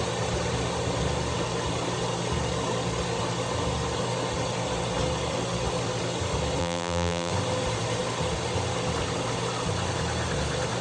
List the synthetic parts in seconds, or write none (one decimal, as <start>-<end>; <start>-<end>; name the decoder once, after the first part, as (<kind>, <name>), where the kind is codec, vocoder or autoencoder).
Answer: 6.6-7.3 (vocoder, BigVGAN v2)